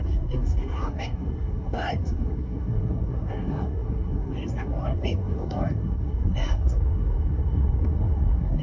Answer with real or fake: fake